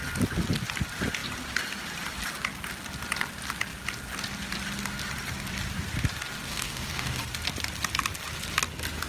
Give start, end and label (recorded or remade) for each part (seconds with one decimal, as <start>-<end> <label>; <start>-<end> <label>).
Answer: 0.0-6.5 recorded; 6.5-7.2 remade; 7.2-9.1 recorded